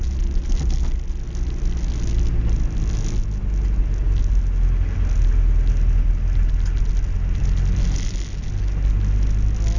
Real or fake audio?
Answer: real